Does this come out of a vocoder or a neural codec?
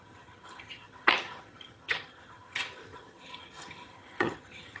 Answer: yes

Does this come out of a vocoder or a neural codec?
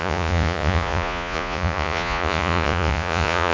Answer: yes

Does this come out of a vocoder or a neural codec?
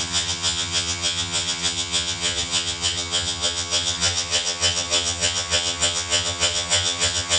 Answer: yes